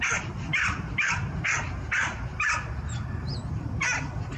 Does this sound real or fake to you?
fake